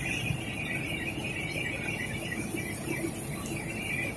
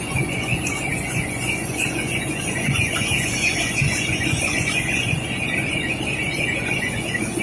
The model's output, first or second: second